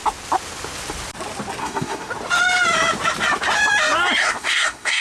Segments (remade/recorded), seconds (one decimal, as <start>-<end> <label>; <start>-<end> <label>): 0.0-1.6 recorded; 1.6-2.1 remade; 2.1-4.2 recorded; 4.2-5.0 remade